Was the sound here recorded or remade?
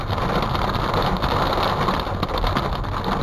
recorded